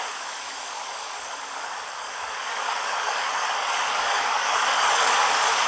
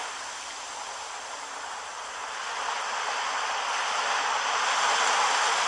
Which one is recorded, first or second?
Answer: second